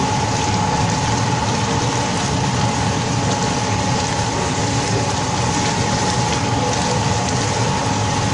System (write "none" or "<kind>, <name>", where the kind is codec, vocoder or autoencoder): none